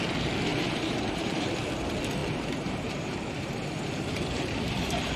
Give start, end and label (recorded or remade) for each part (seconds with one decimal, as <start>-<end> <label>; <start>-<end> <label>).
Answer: 0.0-0.5 recorded; 0.5-1.5 remade; 1.5-2.2 recorded; 2.2-5.2 remade